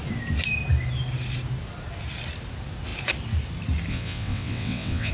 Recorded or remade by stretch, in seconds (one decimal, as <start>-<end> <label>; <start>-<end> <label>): 0.0-3.9 recorded; 3.9-5.1 remade